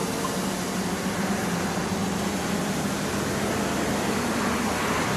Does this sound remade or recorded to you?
recorded